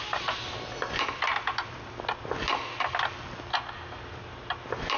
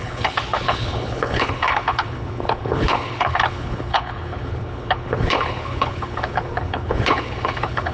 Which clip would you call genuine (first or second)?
first